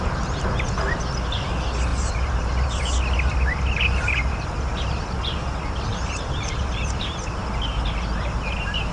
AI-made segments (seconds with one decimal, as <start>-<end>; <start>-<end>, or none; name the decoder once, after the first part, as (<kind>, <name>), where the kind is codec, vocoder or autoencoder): 1.9-2.8 (vocoder, BigVGAN v2); 5.9-7.4